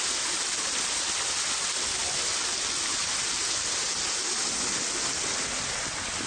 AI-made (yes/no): no